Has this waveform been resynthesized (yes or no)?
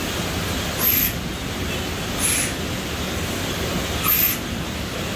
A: no